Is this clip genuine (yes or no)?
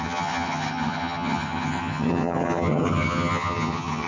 no